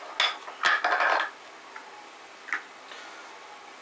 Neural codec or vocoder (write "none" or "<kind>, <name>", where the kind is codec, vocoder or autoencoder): none